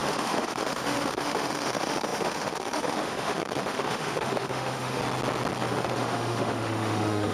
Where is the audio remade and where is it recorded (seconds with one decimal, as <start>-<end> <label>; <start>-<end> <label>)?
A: 0.0-5.0 remade; 5.0-5.7 recorded; 5.7-7.3 remade